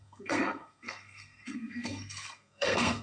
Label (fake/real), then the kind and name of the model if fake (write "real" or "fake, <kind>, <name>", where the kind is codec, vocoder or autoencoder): fake, codec, SNAC